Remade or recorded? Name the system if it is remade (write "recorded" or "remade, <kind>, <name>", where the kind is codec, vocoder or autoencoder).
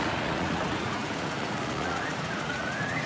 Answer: remade, vocoder, Vocos